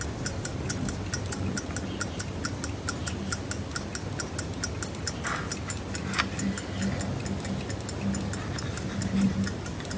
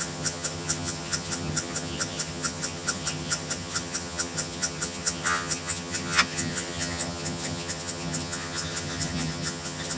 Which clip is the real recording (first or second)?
first